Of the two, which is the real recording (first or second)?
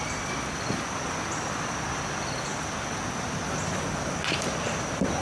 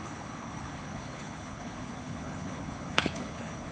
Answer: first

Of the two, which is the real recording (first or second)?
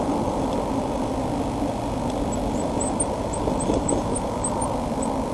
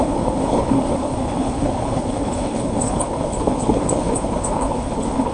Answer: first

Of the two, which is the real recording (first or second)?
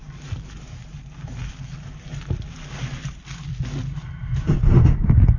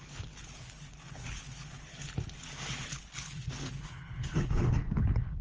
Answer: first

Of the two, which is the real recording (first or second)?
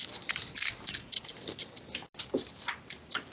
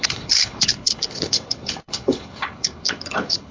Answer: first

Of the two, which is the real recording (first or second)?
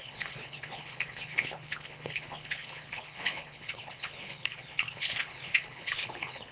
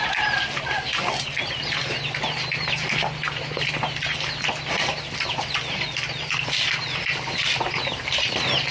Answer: second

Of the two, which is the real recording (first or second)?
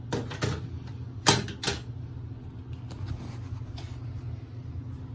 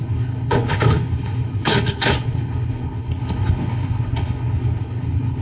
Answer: first